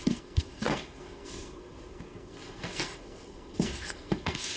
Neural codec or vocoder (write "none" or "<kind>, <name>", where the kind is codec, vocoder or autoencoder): codec, SNAC